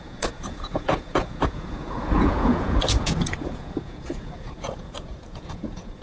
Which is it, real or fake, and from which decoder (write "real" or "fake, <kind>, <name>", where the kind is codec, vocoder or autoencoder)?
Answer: fake, vocoder, Vocos